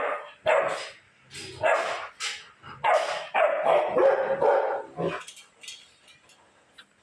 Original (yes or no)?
yes